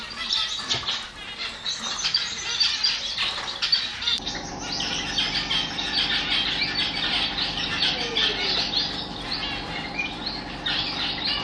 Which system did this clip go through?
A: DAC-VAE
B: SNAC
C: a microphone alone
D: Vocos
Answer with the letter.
C